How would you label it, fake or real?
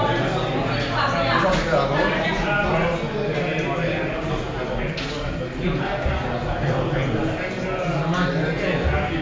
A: real